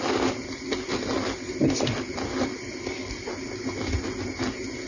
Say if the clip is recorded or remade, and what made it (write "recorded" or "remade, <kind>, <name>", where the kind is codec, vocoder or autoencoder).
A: recorded